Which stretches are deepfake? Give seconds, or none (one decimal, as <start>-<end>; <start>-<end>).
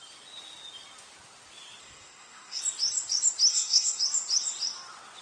1.8-2.6; 3.5-4.0